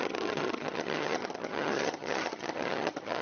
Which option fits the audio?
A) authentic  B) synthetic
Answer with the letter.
B